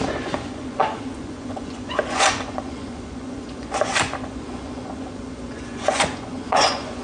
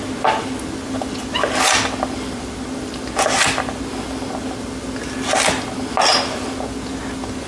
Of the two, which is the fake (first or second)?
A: first